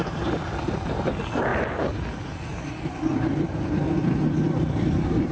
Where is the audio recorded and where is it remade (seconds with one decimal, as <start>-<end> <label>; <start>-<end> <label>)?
0.0-1.5 remade; 1.5-4.7 recorded; 4.7-5.3 remade